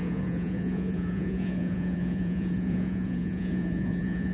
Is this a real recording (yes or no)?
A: no